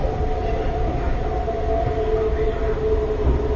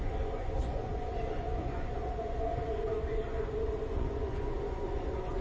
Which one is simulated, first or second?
second